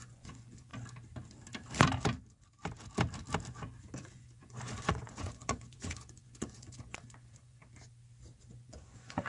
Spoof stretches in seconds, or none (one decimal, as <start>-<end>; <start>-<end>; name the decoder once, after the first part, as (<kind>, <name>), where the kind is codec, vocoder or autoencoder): 0.0-0.7 (vocoder, Vocos); 4.0-7.6; 8.5-9.3